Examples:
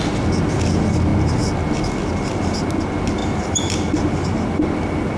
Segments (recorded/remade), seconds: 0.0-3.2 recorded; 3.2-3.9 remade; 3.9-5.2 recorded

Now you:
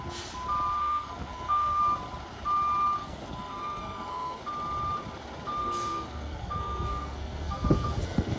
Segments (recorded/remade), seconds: 0.0-0.8 recorded; 0.8-1.8 remade; 1.8-3.0 recorded; 3.0-4.4 remade; 4.4-5.6 recorded; 5.6-8.4 remade

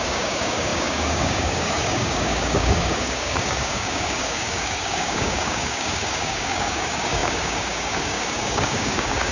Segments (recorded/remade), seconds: 0.0-9.3 remade

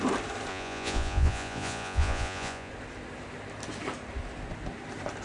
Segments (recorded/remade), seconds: 0.0-0.5 recorded; 0.5-2.7 remade; 2.7-5.2 recorded